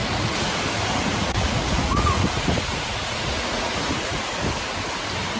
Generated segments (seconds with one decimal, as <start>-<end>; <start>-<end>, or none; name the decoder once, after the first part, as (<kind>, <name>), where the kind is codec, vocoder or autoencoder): 0.0-0.6 (vocoder, Vocos); 1.1-4.3